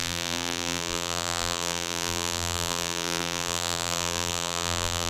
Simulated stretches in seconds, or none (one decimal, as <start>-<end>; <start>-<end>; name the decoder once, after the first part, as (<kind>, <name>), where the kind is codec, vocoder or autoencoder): 0.0-5.1 (vocoder, BigVGAN v2)